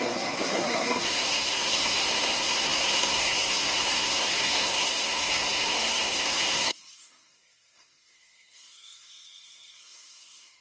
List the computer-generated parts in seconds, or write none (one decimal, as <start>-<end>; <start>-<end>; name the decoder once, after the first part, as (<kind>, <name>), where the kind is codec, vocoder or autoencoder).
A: 0.0-10.6 (codec, SNAC)